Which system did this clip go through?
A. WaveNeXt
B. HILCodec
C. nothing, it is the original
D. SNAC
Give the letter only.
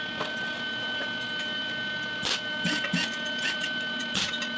C